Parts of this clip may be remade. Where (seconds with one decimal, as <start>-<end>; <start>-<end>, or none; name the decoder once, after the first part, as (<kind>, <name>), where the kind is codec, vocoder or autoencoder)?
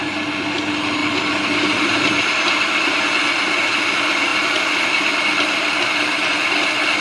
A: none